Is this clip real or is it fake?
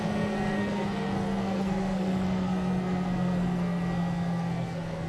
fake